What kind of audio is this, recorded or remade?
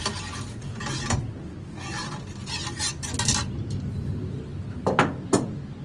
recorded